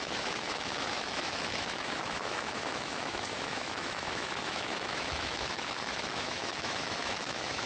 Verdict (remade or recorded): remade